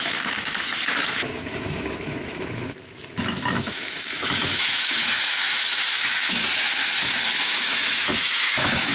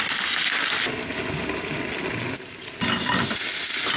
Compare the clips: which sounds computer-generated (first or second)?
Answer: first